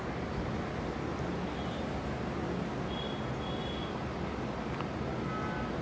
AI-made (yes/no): no